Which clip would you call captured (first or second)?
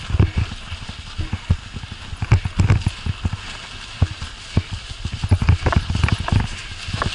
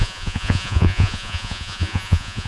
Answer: first